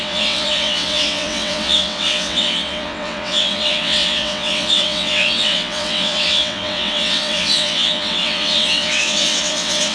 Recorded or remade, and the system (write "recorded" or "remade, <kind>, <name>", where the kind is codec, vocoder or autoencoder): remade, vocoder, WaveNeXt